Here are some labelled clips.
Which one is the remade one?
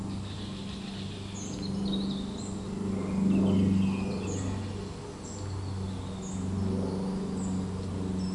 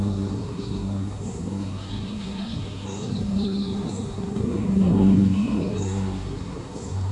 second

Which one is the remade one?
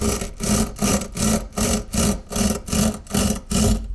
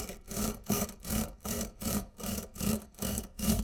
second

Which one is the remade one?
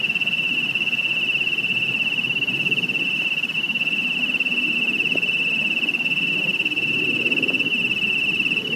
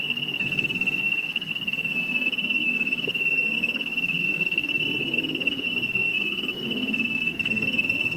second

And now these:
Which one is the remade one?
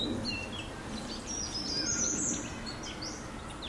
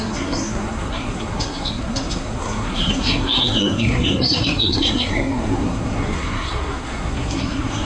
second